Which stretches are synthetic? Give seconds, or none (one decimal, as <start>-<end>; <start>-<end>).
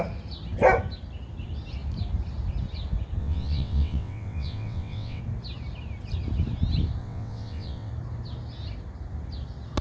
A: 3.2-5.2; 7.0-7.9